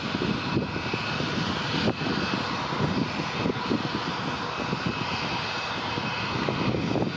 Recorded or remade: recorded